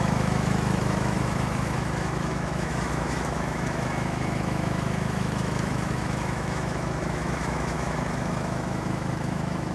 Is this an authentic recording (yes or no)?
no